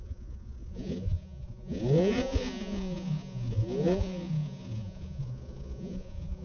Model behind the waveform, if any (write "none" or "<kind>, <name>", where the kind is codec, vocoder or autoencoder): vocoder, Vocos